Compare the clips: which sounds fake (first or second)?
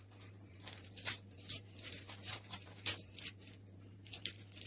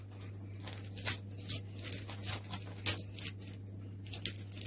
first